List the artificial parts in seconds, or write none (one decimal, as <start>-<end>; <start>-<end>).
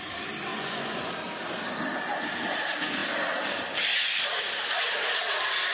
0.5-1.1